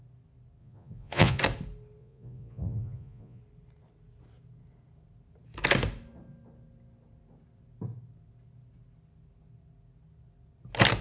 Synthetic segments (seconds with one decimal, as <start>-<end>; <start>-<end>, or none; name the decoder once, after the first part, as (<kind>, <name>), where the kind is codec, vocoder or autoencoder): 0.6-1.4 (vocoder, Vocos); 2.0-3.4